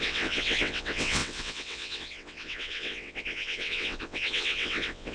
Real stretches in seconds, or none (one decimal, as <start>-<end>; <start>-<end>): none